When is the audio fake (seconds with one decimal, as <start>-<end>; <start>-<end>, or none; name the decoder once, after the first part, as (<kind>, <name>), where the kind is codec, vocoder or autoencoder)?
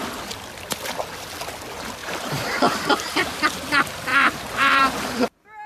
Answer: 2.0-3.4 (vocoder, BigVGAN v2); 4.1-4.8